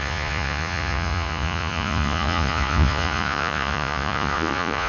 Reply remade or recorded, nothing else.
remade